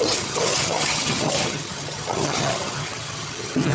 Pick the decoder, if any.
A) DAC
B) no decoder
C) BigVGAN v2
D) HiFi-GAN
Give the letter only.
D